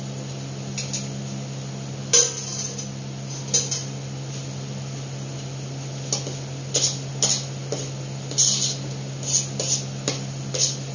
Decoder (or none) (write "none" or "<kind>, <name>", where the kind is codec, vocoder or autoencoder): none